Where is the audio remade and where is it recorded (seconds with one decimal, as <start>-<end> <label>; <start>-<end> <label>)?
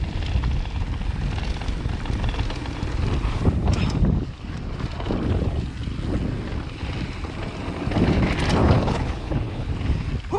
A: 0.0-8.6 recorded; 8.6-9.7 remade; 9.7-10.4 recorded